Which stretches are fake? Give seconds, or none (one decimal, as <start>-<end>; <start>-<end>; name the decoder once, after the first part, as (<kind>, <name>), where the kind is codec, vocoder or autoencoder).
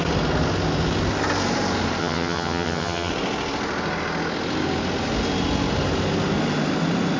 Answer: 2.0-3.1 (vocoder, HiFi-GAN)